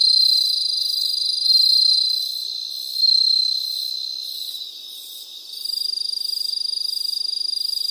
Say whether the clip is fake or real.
real